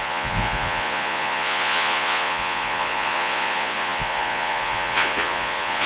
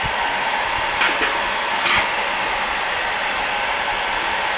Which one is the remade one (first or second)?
first